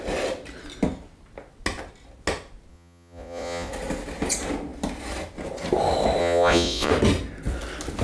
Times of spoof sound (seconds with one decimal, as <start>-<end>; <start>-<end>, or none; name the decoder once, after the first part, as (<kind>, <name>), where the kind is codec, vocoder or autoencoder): 2.7-3.7 (vocoder, Vocos); 6.2-6.9